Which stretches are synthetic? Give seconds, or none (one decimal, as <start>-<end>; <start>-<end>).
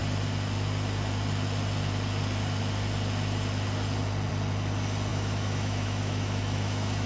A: 5.1-7.1